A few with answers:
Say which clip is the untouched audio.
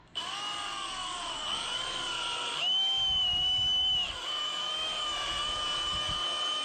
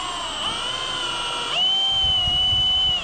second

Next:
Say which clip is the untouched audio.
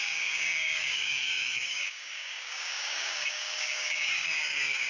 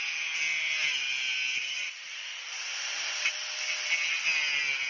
second